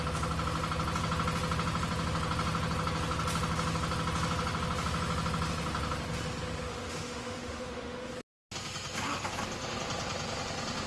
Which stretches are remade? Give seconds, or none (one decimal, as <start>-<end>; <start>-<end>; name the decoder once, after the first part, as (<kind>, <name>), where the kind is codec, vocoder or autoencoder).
6.7-8.1 (autoencoder, DAC-VAE)